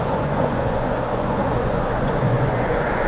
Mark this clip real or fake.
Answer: fake